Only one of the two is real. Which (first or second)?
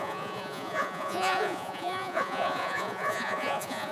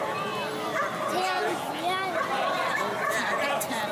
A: second